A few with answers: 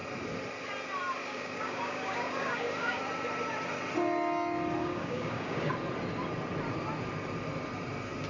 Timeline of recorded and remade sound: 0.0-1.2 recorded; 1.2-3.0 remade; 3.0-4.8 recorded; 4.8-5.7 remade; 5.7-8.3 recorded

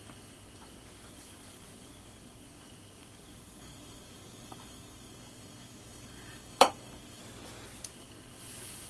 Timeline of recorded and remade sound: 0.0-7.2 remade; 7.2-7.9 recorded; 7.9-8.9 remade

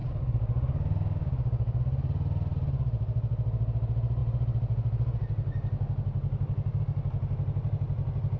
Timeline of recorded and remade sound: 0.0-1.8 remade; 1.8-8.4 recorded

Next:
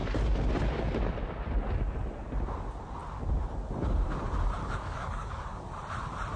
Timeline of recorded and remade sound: 0.0-4.6 recorded; 4.6-5.6 remade; 5.6-6.4 recorded

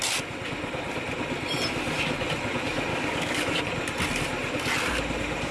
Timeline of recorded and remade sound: 0.0-2.9 recorded; 2.9-3.6 remade; 3.6-5.5 recorded

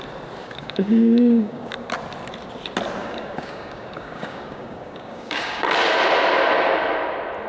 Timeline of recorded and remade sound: 0.0-0.4 recorded; 0.4-1.7 remade; 1.7-3.0 recorded; 3.0-5.6 remade; 5.6-7.5 recorded

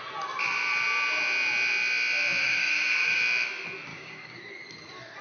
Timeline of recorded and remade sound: 0.0-2.4 recorded; 2.4-3.2 remade; 3.2-3.9 recorded; 3.9-4.5 remade; 4.5-5.2 recorded

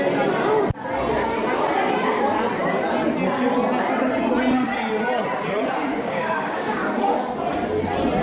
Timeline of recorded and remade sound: 0.0-5.9 recorded; 5.9-7.0 remade; 7.0-8.2 recorded